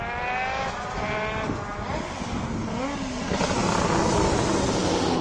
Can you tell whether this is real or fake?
real